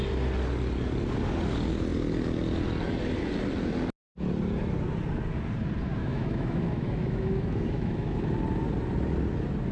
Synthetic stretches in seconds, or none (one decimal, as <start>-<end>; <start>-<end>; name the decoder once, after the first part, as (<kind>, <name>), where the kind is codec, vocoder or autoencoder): 6.0-8.3 (autoencoder, DAC-VAE)